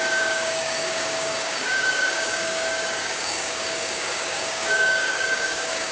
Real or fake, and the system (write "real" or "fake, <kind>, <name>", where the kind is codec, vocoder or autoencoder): fake, codec, DAC